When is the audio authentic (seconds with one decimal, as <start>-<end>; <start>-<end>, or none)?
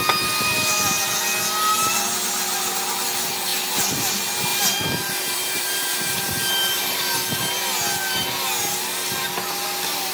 0.0-4.5; 7.0-10.1